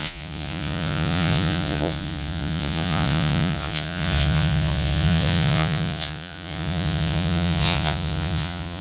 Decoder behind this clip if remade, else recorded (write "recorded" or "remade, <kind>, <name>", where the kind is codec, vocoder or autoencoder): remade, vocoder, Vocos